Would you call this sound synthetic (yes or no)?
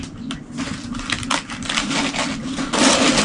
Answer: no